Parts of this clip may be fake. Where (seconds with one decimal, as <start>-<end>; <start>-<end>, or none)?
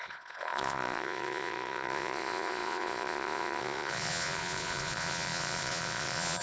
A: 0.0-6.4